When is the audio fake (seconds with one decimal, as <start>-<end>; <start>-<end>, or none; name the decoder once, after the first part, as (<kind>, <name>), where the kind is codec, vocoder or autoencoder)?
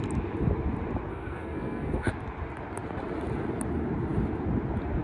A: 1.1-2.1 (codec, SNAC)